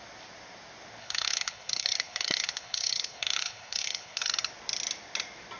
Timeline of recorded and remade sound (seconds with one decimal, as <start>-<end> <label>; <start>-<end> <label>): 0.0-1.0 recorded; 1.0-4.3 remade; 4.3-5.6 recorded